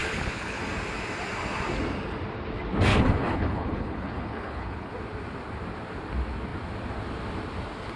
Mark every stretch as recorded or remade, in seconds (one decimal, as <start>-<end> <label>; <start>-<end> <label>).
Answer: 0.0-0.6 remade; 0.6-2.9 recorded; 2.9-4.9 remade; 4.9-8.0 recorded